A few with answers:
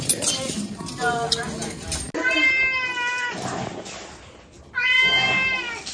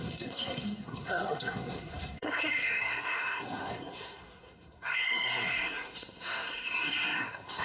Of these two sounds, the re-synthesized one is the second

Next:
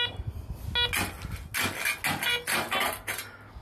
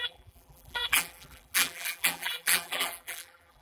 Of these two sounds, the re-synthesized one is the second